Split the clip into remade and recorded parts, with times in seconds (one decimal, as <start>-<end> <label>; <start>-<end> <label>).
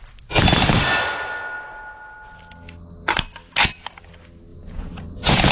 0.0-4.5 recorded; 4.5-5.5 remade